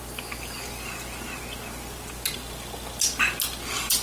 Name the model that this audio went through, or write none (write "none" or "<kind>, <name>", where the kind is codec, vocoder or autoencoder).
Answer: none